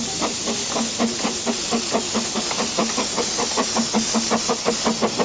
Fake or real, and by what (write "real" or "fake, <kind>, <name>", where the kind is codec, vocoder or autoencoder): real